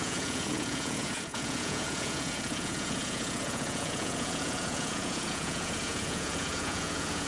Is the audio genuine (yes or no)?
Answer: no